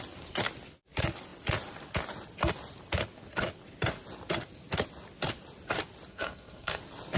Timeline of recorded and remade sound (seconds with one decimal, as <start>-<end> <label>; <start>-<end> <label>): 0.0-6.1 recorded; 6.1-6.8 remade; 6.8-7.2 recorded